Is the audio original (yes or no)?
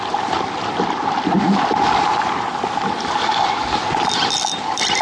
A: yes